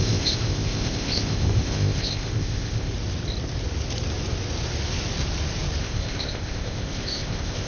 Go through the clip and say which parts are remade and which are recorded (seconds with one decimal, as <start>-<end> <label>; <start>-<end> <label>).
0.0-2.9 remade; 2.9-5.8 recorded; 5.8-7.7 remade